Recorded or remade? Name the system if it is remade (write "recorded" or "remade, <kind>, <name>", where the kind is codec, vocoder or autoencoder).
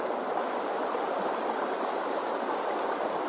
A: recorded